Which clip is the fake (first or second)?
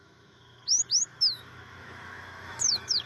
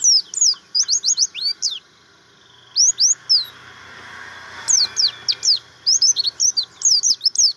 first